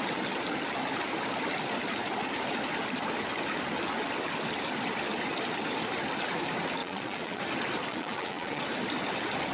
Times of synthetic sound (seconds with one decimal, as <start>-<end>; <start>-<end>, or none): 6.8-7.4; 7.9-8.6

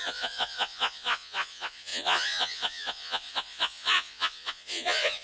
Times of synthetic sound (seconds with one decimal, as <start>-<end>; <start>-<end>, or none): 0.0-5.2

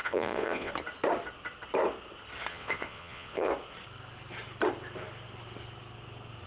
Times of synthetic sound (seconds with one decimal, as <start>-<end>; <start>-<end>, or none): 0.0-0.7; 2.5-3.5

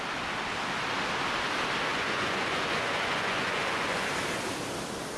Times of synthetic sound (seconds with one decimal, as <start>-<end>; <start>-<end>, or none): 1.9-4.1

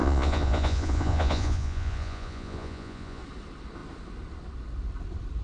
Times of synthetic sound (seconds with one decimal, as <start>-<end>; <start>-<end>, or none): 0.0-3.2

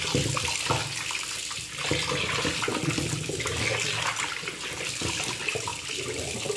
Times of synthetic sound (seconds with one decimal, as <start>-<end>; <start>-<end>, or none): none

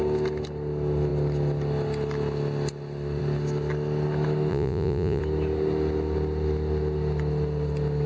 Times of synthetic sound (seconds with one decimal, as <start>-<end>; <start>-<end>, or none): 4.5-5.2

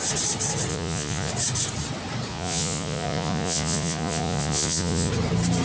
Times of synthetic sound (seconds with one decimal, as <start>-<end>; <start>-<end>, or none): 0.7-1.3; 2.3-5.1